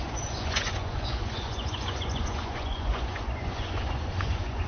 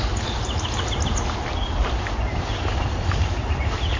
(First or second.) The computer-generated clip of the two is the first